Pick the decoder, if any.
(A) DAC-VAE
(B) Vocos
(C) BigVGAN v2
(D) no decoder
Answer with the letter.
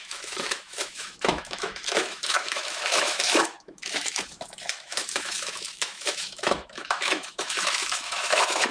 A